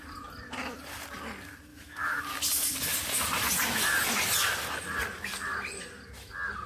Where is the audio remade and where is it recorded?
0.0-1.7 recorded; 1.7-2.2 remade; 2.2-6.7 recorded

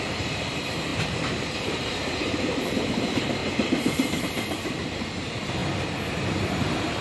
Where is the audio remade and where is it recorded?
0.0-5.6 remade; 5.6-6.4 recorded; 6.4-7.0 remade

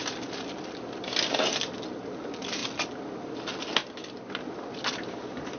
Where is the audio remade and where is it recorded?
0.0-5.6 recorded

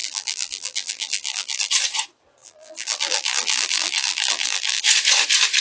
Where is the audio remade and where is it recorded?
0.0-1.7 remade; 1.7-2.4 recorded; 2.4-4.8 remade; 4.8-5.6 recorded

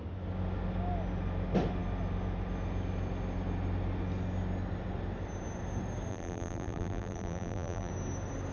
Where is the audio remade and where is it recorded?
0.0-6.1 recorded; 6.1-7.9 remade; 7.9-8.5 recorded

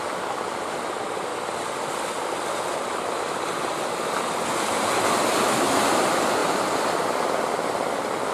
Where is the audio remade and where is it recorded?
0.0-6.4 recorded; 6.4-6.9 remade; 6.9-8.3 recorded